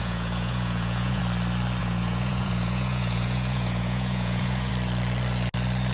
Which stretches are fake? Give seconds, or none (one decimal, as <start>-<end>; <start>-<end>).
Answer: 0.0-1.2; 1.8-4.7